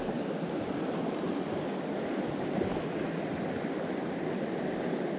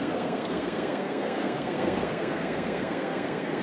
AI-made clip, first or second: second